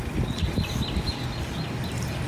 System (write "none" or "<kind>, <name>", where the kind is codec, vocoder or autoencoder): none